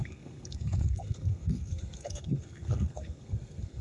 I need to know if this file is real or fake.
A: fake